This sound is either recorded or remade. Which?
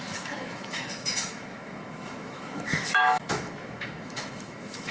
remade